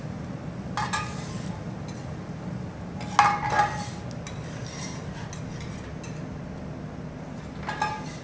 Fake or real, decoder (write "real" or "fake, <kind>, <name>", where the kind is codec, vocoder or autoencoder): real